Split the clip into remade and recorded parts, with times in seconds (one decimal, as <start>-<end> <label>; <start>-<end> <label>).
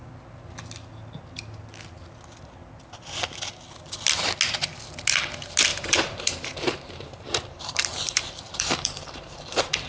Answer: 0.0-5.7 recorded; 5.7-9.9 remade